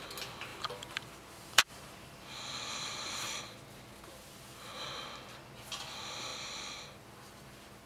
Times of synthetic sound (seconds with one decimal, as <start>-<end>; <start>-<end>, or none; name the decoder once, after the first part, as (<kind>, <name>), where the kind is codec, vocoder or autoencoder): 0.5-3.4 (vocoder, BigVGAN v2)